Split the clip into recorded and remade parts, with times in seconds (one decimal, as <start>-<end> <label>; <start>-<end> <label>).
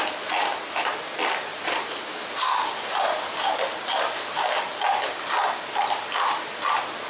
0.0-1.5 recorded; 1.5-4.7 remade; 4.7-7.1 recorded